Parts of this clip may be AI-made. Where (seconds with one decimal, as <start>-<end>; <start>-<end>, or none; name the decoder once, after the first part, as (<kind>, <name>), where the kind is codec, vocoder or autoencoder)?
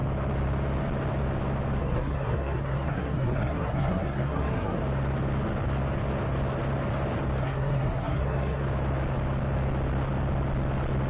1.8-4.8 (codec, SNAC); 7.4-8.6